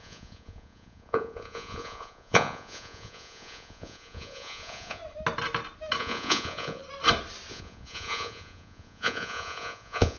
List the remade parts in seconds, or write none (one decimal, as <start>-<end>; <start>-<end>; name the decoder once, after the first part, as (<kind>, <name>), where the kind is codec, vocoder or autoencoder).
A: 0.0-5.0 (vocoder, Vocos); 6.0-6.8; 7.5-10.2